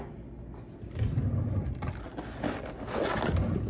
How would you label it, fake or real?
real